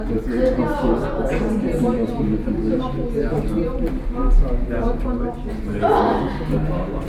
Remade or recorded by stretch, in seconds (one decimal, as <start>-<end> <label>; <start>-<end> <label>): 0.0-7.1 recorded